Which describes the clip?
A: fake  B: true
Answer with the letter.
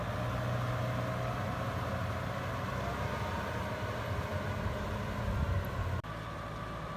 B